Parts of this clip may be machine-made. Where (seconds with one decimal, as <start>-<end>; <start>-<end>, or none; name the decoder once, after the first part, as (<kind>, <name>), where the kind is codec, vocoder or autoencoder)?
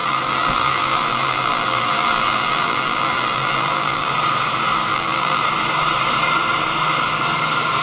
0.0-4.1 (vocoder, BigVGAN v2); 4.9-5.4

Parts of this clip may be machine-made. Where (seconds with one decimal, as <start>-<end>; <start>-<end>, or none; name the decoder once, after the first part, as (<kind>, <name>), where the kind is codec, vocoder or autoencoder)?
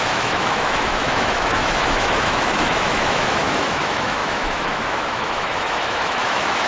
0.0-6.7 (autoencoder, DAC-VAE)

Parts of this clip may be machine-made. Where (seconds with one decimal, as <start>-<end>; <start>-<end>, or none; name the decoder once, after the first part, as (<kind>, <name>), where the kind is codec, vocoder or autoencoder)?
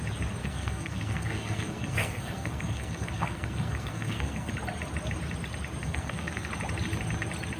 0.4-4.5 (codec, SNAC); 5.8-6.5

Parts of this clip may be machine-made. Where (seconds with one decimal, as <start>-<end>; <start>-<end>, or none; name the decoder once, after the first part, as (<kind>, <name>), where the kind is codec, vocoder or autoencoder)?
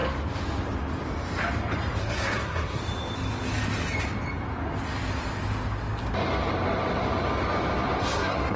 2.0-2.8 (codec, SNAC); 8.0-8.6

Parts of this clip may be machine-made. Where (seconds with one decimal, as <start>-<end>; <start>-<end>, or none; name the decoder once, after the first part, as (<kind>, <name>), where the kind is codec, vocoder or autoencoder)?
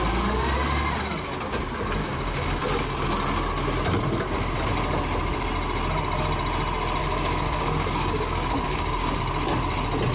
2.0-2.6 (codec, DAC); 7.0-9.2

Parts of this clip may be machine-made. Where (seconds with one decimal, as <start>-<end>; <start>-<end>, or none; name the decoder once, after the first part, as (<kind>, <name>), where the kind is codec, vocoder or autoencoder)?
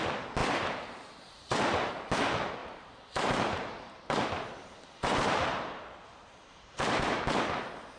0.4-1.9 (vocoder, BigVGAN v2); 2.6-7.2